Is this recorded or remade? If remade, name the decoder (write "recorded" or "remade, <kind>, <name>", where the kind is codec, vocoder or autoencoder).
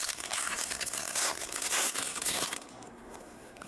remade, codec, SNAC